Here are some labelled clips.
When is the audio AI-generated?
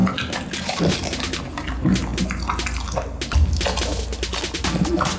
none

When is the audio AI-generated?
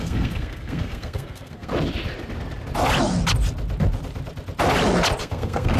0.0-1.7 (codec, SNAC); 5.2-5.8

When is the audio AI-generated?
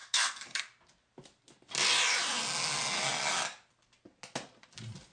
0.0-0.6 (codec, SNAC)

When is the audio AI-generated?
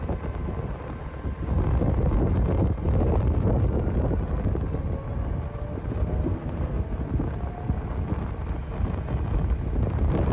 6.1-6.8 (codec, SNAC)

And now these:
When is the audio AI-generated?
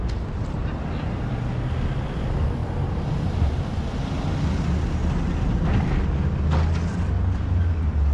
none